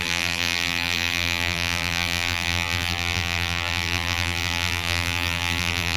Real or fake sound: fake